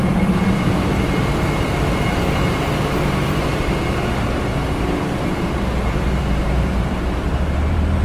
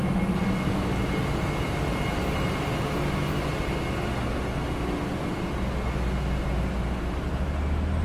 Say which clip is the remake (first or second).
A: first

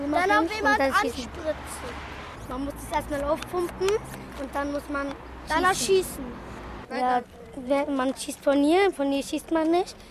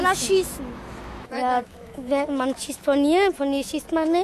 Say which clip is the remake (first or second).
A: second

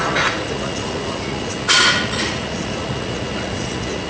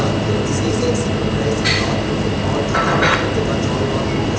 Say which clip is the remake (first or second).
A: first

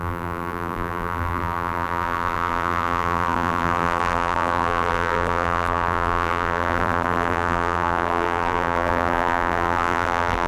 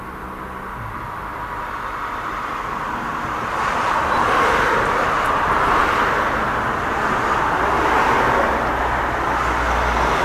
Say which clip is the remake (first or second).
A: first